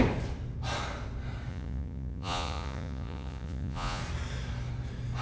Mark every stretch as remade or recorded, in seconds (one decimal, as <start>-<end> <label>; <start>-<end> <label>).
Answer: 0.0-1.5 recorded; 1.5-4.0 remade; 4.0-5.2 recorded